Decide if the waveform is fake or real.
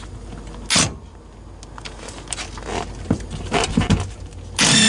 real